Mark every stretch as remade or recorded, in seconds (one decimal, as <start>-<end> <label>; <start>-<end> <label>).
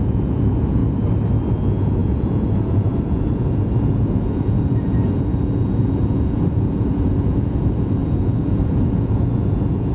0.0-0.8 remade; 0.8-1.5 recorded; 1.5-9.9 remade